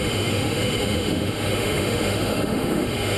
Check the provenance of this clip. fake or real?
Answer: fake